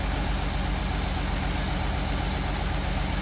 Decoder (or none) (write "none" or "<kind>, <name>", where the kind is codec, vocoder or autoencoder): none